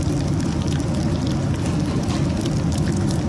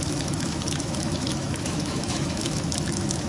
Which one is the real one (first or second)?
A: first